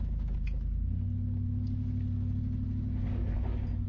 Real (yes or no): yes